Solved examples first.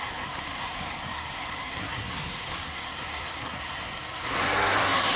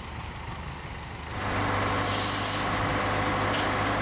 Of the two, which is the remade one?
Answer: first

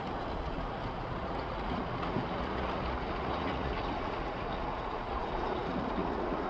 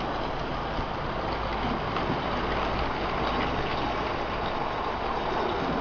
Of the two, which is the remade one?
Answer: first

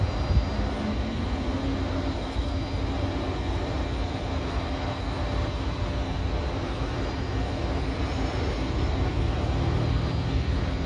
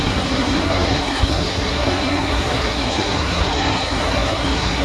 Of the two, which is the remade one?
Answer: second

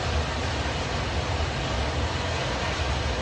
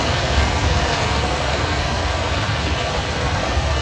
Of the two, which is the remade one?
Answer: second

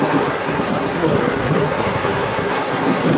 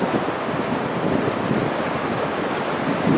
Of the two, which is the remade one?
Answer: first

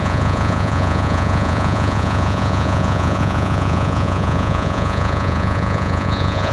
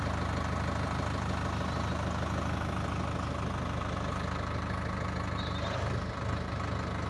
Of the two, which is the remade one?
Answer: first